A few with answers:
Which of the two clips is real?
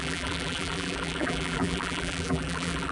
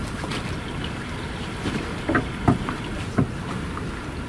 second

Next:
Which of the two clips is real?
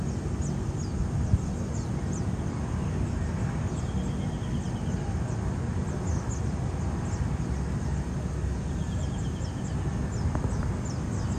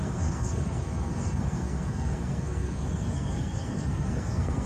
first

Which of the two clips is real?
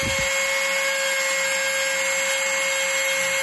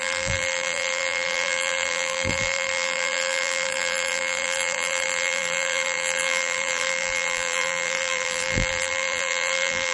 first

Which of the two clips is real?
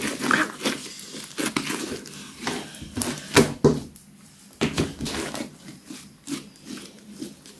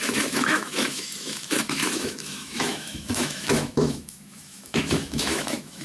first